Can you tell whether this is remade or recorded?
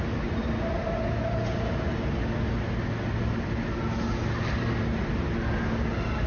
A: recorded